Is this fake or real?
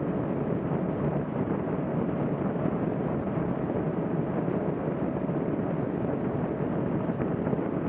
real